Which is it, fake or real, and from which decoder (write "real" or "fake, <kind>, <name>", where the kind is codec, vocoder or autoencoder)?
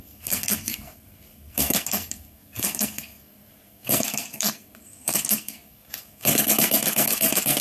fake, codec, SNAC